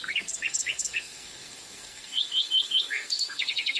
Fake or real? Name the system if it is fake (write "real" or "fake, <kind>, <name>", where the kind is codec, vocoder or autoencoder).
fake, codec, SNAC